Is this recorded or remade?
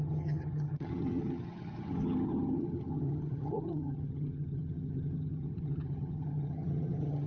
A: remade